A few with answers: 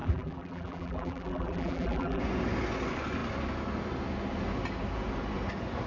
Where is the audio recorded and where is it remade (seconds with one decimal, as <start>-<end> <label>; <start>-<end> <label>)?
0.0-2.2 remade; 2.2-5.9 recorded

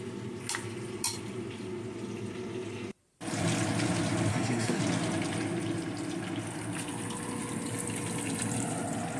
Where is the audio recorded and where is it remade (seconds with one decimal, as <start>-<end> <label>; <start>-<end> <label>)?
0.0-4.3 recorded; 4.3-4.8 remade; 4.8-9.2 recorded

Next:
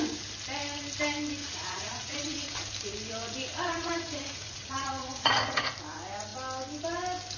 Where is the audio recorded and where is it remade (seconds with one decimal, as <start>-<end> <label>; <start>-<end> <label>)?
0.0-1.4 recorded; 1.4-2.6 remade; 2.6-3.5 recorded; 3.5-5.7 remade; 5.7-7.4 recorded